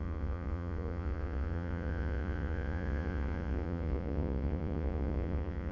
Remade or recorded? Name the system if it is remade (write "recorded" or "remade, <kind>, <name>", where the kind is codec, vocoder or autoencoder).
remade, vocoder, Vocos